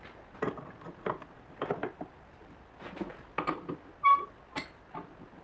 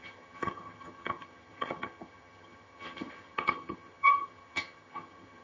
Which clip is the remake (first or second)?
second